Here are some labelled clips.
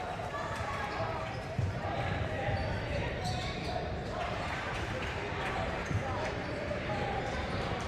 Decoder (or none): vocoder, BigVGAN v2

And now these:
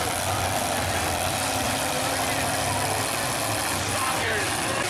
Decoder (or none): vocoder, BigVGAN v2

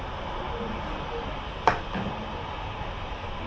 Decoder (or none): none